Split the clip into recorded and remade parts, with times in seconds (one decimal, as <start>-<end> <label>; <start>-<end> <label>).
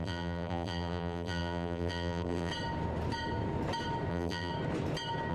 0.0-2.5 remade; 2.5-4.1 recorded; 4.1-4.5 remade; 4.5-5.3 recorded